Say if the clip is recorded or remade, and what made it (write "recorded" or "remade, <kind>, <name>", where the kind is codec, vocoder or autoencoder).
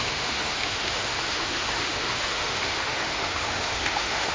remade, autoencoder, DAC-VAE